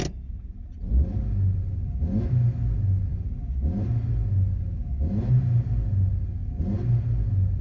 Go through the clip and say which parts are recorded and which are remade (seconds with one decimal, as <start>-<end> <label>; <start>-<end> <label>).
0.0-7.6 recorded